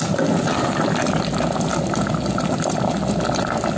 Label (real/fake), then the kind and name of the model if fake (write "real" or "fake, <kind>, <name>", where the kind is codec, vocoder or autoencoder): real